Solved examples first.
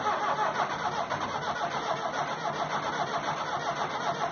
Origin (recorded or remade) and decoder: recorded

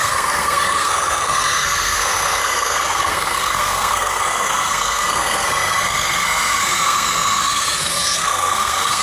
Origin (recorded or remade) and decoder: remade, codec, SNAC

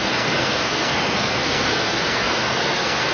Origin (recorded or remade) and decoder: remade, codec, SNAC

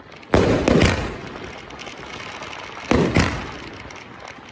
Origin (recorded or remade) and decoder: recorded